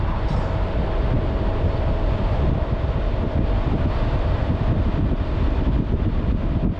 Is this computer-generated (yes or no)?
no